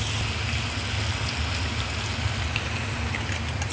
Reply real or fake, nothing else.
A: real